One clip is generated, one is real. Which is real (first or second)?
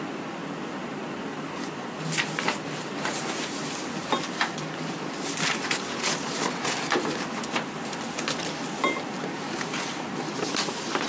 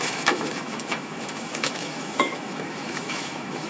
first